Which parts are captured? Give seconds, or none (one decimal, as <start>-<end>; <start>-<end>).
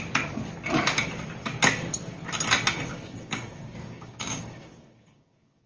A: 0.0-2.9